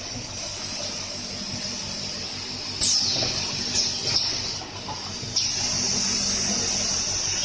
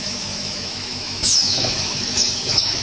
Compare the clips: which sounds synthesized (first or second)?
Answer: second